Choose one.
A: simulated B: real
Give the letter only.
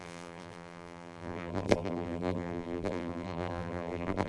A